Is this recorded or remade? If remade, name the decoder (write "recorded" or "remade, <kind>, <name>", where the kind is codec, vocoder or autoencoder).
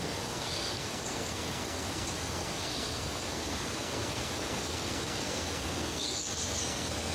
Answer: remade, codec, SNAC